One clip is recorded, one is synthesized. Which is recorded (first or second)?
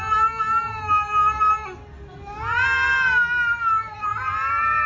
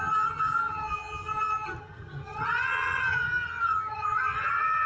first